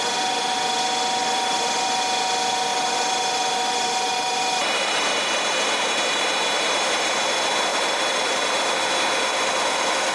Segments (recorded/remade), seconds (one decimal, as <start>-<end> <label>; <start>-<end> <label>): 0.0-1.2 recorded; 1.2-2.0 remade; 2.0-2.7 recorded; 2.7-7.2 remade; 7.2-7.7 recorded; 7.7-8.8 remade; 8.8-10.1 recorded